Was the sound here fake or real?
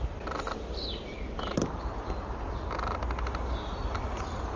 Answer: real